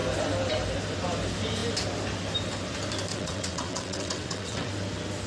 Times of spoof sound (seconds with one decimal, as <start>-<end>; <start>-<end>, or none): 3.1-4.7